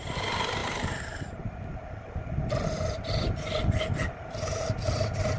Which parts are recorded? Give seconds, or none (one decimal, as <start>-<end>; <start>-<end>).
0.0-5.4